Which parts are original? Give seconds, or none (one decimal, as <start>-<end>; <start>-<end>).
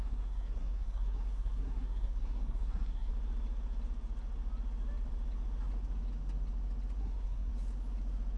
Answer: 3.1-7.0; 7.5-8.4